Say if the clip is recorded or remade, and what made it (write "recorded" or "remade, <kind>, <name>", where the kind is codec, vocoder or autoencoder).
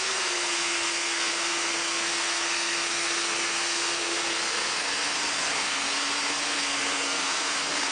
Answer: remade, codec, SNAC